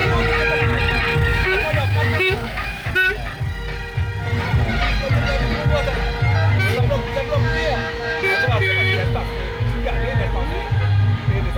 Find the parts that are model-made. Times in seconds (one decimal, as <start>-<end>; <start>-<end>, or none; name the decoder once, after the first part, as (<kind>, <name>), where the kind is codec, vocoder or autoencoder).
1.3-2.9 (autoencoder, DAC-VAE); 6.7-9.9